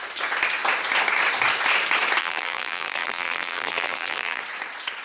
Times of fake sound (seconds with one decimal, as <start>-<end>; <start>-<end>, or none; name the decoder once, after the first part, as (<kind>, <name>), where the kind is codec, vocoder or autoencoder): 2.2-4.4 (vocoder, BigVGAN v2)